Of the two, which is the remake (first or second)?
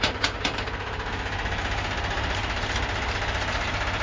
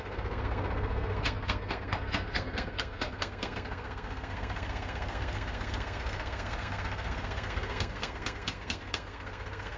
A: second